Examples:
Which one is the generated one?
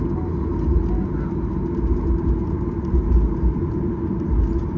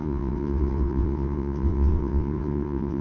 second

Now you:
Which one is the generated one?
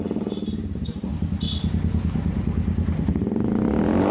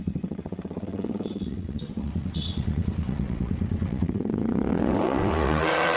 second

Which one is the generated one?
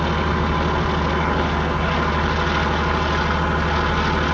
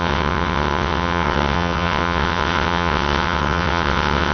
second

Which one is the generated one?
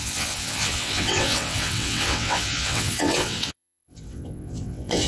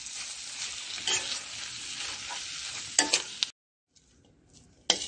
first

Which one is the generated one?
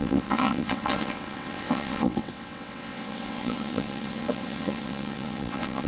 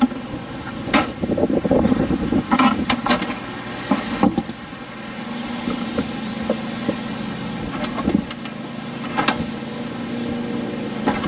first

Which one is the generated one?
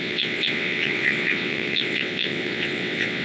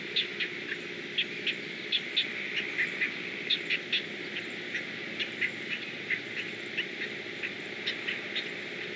first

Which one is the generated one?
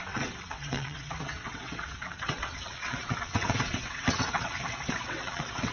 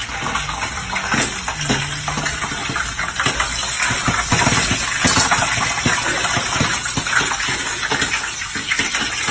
first